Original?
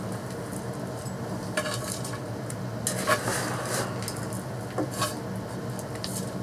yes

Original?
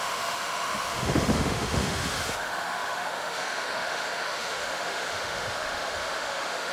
no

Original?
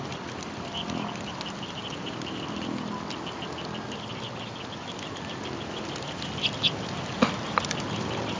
yes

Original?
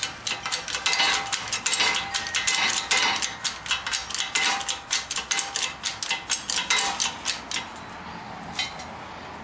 yes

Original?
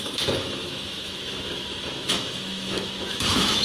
no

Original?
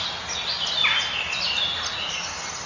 yes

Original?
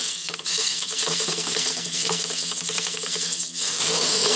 no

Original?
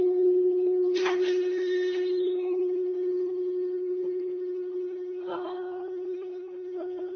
no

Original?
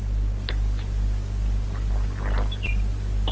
yes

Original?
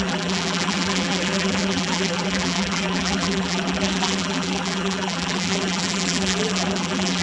no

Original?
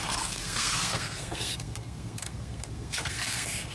no